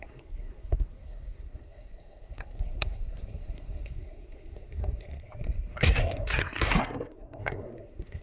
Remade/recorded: remade